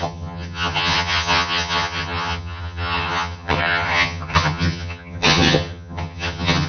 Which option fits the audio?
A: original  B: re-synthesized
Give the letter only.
B